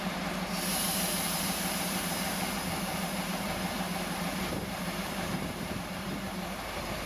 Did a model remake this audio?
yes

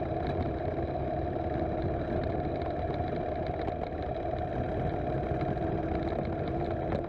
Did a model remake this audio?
no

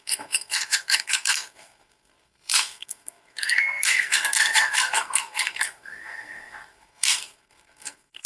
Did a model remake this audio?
yes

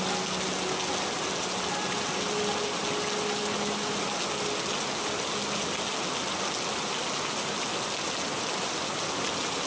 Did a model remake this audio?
no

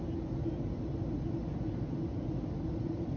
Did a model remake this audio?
no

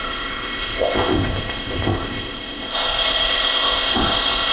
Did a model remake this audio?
yes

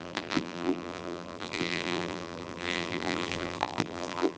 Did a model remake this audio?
yes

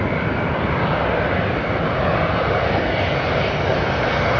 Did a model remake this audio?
no